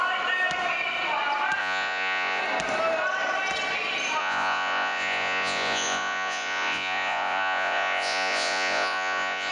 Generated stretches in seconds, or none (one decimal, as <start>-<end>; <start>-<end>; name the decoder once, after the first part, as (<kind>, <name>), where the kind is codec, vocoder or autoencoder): 1.6-2.4 (vocoder, Vocos); 4.2-9.5